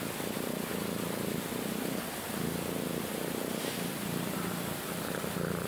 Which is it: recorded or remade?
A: recorded